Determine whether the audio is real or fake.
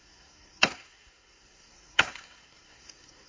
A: fake